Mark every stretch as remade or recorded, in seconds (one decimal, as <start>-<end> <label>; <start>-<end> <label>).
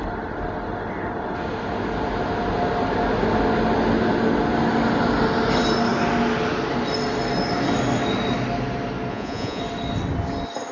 0.0-9.1 recorded; 9.1-9.6 remade; 9.6-10.7 recorded